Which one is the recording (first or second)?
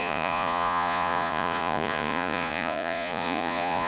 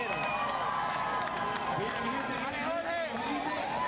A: second